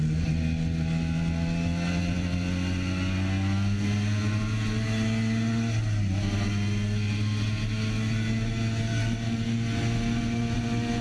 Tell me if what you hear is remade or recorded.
recorded